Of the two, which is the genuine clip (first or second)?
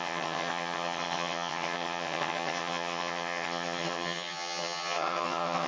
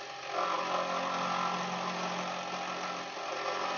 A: second